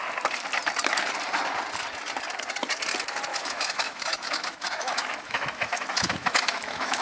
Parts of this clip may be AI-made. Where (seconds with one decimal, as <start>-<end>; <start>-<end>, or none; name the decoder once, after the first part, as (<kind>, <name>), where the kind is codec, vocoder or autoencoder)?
3.3-7.0 (autoencoder, DAC-VAE)